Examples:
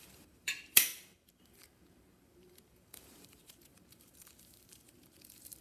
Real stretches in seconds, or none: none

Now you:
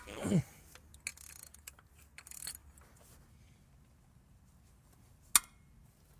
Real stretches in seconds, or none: 0.0-6.2

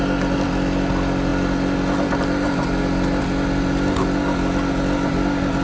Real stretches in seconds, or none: 0.0-5.6

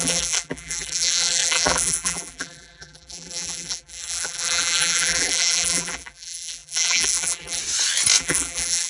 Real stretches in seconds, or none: 7.6-8.2

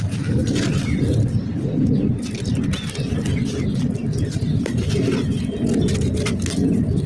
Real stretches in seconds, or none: 0.0-0.4; 2.2-7.1